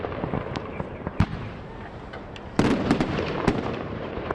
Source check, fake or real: fake